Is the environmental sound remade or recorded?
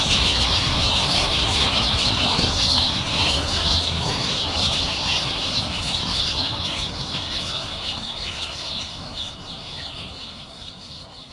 remade